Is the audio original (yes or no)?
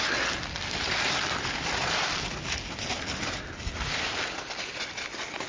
yes